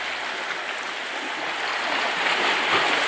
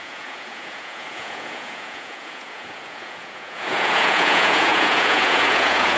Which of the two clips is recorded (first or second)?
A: first